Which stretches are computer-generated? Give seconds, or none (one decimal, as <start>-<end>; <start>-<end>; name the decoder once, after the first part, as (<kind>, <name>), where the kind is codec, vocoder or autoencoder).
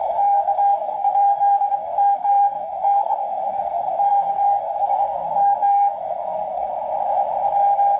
0.0-6.7 (codec, SNAC)